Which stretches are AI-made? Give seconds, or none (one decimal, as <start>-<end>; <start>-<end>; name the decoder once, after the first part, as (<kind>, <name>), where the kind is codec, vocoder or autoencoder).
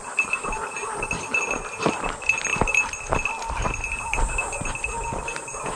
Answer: none